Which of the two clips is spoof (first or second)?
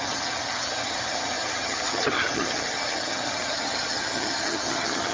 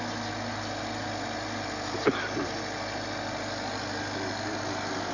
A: first